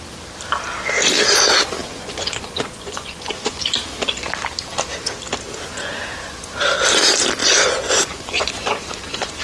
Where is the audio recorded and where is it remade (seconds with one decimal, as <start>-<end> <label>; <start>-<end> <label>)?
0.0-1.8 recorded; 1.8-3.8 remade; 3.8-5.7 recorded; 5.7-6.6 remade; 6.6-7.4 recorded; 7.4-9.4 remade